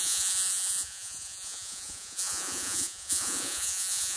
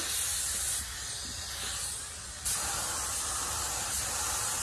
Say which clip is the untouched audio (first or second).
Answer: second